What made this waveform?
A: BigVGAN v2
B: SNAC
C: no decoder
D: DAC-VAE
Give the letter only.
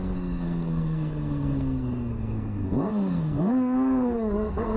B